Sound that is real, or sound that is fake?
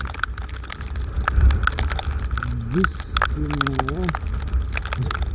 real